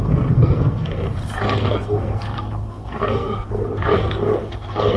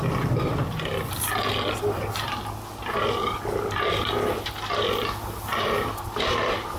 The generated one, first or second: first